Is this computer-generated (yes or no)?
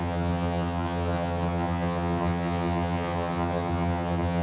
yes